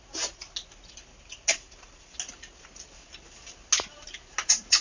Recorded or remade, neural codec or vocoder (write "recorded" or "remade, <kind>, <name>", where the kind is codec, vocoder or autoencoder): recorded